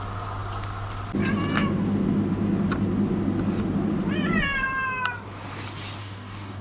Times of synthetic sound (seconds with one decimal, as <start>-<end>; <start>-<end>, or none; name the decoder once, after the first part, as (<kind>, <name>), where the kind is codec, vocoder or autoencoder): 6.0-6.6 (codec, DAC)